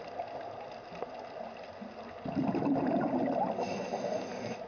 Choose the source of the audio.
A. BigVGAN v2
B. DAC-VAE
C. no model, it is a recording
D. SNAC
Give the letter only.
C